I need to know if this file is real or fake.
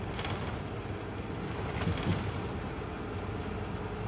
real